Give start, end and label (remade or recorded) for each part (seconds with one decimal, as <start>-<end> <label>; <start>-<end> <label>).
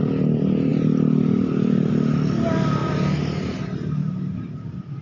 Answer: 0.0-0.7 recorded; 0.7-1.9 remade; 1.9-2.8 recorded; 2.8-3.4 remade; 3.4-4.0 recorded; 4.0-5.0 remade